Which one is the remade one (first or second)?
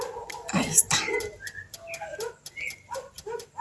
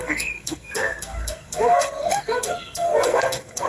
second